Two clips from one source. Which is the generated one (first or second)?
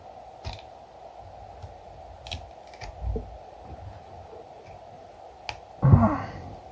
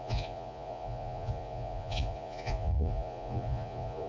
second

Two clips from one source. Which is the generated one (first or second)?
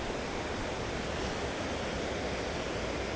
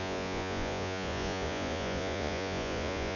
second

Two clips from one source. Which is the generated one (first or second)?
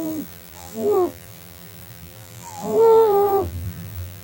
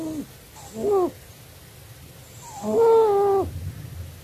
first